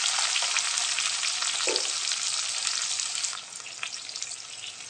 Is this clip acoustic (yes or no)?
yes